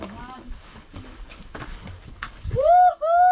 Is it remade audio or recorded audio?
remade